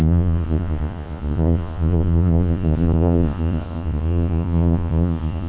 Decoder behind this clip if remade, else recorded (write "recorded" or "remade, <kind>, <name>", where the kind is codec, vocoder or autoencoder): remade, vocoder, Vocos